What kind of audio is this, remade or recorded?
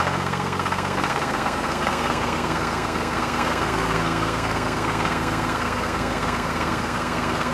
remade